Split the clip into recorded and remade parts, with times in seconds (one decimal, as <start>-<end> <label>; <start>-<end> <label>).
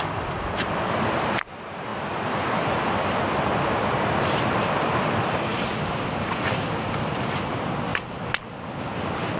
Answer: 0.0-7.9 remade; 7.9-8.8 recorded; 8.8-9.4 remade